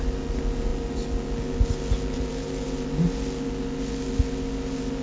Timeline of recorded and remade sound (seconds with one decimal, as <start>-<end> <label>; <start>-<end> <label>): 0.0-5.0 recorded